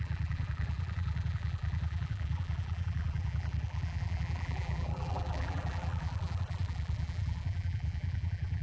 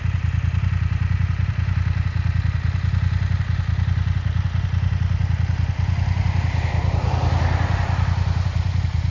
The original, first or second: second